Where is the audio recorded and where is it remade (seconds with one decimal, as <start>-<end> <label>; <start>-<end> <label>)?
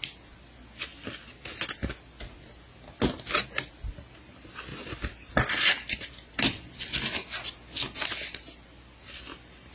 0.0-9.7 recorded